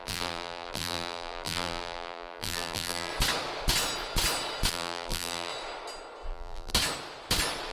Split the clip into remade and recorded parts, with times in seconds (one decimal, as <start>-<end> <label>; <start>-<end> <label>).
0.0-3.1 remade; 3.1-4.7 recorded; 4.7-5.5 remade; 5.5-6.3 recorded; 6.3-6.7 remade; 6.7-7.7 recorded